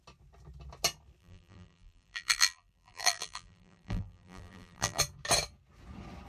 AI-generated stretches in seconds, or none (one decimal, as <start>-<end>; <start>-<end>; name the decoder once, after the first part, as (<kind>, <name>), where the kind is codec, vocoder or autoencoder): 1.2-5.0 (vocoder, BigVGAN v2)